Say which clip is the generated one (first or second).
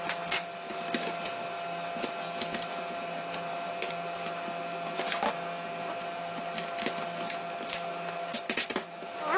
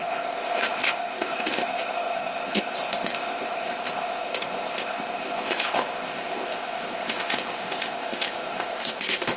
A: second